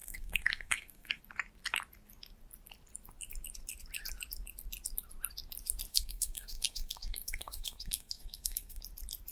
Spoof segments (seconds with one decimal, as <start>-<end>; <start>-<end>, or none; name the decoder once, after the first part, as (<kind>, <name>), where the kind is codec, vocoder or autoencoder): 0.0-1.2 (codec, SNAC); 5.9-8.8